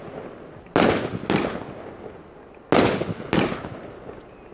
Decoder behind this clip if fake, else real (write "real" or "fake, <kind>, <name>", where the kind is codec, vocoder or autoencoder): real